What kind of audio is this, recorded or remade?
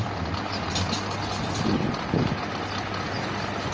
recorded